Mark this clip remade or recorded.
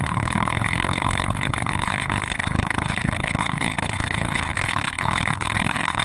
remade